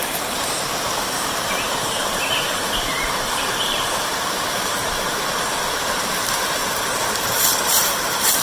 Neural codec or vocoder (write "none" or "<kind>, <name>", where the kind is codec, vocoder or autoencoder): vocoder, BigVGAN v2